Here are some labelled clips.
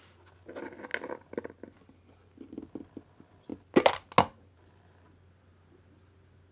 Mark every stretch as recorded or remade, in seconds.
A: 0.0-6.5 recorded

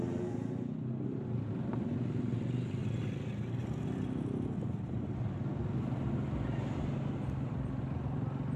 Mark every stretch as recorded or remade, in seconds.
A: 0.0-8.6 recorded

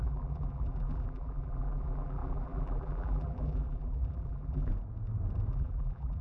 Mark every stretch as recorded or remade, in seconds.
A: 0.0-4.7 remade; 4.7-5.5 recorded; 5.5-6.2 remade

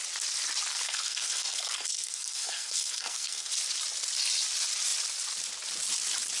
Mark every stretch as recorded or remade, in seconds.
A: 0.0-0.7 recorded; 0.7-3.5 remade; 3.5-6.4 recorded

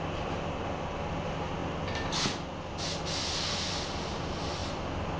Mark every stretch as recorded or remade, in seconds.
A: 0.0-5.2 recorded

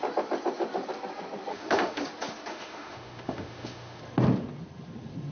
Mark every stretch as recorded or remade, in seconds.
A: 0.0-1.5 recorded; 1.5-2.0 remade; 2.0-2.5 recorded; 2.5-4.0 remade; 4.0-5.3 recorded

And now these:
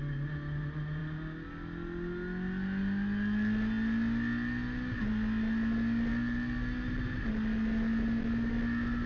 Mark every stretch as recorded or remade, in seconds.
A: 0.0-9.1 recorded

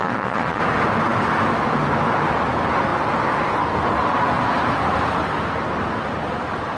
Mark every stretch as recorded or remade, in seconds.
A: 0.0-0.6 remade; 0.6-6.8 recorded